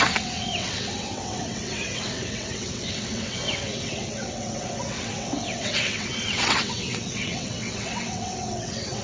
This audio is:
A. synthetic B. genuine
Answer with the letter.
A